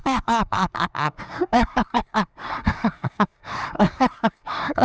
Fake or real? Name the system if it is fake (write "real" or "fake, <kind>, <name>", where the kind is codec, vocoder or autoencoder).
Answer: fake, codec, SNAC